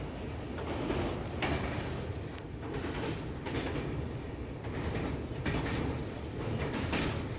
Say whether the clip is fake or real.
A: real